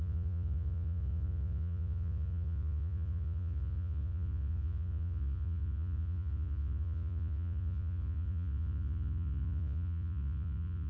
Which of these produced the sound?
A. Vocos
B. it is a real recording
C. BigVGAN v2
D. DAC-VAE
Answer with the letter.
A